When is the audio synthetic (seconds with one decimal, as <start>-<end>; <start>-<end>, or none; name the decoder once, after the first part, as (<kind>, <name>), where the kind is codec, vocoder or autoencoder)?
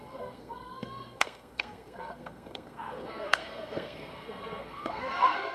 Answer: 0.0-5.5 (codec, SNAC)